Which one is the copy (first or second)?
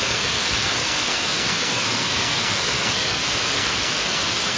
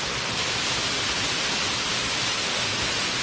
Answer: first